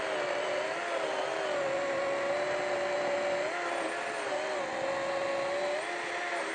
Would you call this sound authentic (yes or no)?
yes